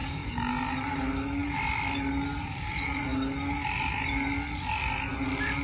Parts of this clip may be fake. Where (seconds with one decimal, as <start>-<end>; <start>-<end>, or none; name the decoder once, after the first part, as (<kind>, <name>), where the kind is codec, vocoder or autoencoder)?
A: 0.0-0.5 (codec, DAC)